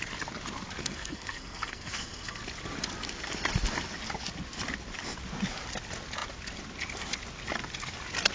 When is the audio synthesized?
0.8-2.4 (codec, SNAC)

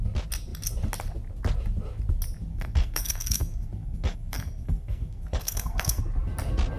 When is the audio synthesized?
2.5-6.0 (codec, SNAC)

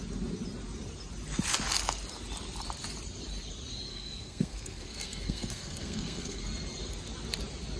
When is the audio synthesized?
3.9-6.4 (codec, SNAC)

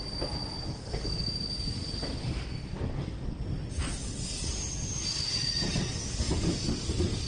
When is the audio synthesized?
0.8-1.3 (codec, SNAC); 2.7-3.4

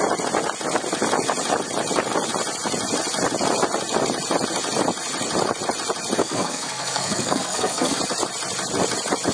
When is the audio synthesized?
6.2-8.0 (codec, SNAC)

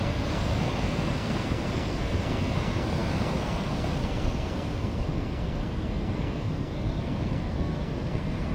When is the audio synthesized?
0.0-8.5 (codec, SNAC)

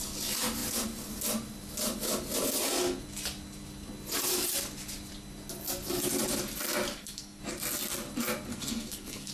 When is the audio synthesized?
6.9-7.4 (codec, SNAC); 8.5-9.3

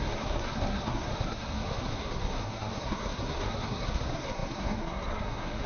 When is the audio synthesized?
0.0-5.7 (codec, SNAC)